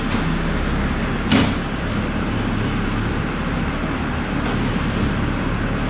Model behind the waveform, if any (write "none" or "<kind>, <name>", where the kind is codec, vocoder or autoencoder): none